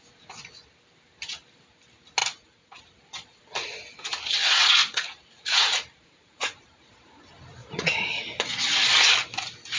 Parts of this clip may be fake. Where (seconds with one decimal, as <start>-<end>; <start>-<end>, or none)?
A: 2.2-2.8; 4.8-6.9; 7.6-8.2